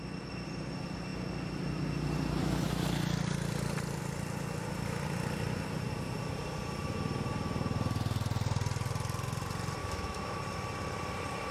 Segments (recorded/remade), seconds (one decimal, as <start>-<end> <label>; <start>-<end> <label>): 0.0-9.8 recorded; 9.8-10.4 remade; 10.4-11.5 recorded